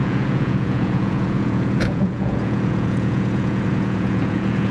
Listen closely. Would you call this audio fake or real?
fake